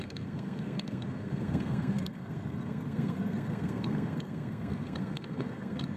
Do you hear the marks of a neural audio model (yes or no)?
yes